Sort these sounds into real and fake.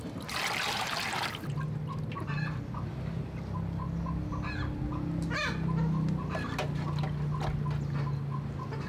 real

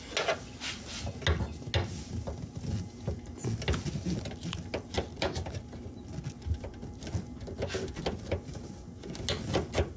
real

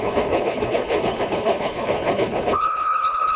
fake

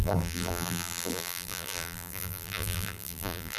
fake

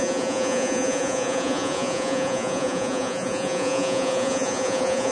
fake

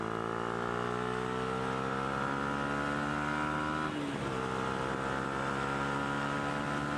real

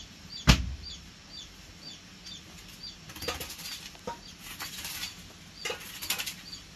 real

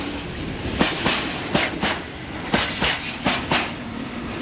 real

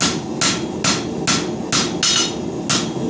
real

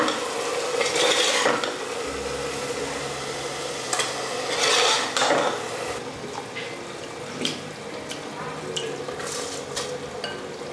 real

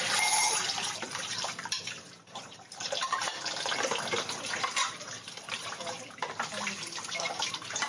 fake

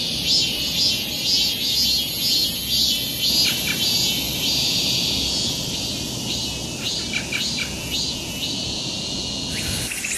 real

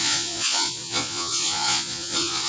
fake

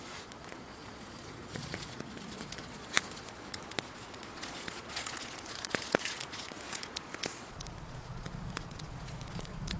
fake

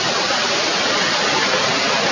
real